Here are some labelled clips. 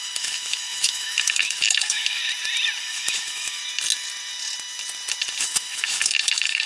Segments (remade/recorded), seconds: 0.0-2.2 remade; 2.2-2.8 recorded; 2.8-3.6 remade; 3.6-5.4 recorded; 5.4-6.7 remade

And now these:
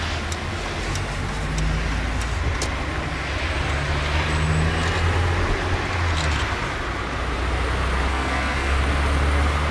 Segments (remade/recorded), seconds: 0.0-8.1 recorded; 8.1-8.8 remade; 8.8-9.7 recorded

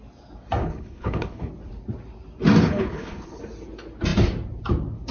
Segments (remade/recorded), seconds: 0.0-0.6 recorded; 0.6-1.5 remade; 1.5-2.6 recorded; 2.6-3.4 remade; 3.4-5.1 recorded

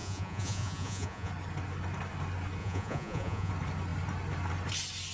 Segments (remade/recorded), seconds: 0.0-1.3 remade; 1.3-2.6 recorded; 2.6-3.5 remade; 3.5-5.1 recorded

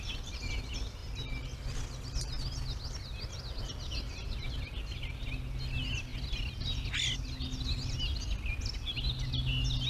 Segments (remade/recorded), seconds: 0.0-9.9 recorded

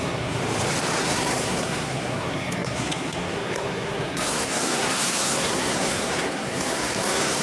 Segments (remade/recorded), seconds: 0.0-0.4 remade; 0.4-1.0 recorded; 1.0-7.4 remade

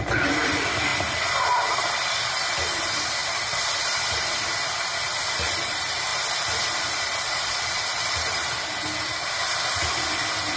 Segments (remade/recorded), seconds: 0.0-0.9 remade; 0.9-1.8 recorded; 1.8-6.1 remade; 6.1-10.6 recorded